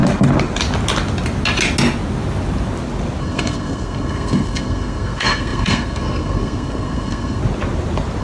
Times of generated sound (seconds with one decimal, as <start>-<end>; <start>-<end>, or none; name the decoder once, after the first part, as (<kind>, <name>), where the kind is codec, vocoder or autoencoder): 3.2-7.4 (codec, SNAC)